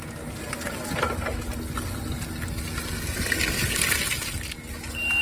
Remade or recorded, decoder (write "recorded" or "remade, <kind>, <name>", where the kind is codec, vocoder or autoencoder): recorded